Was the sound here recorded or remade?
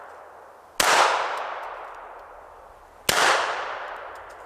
recorded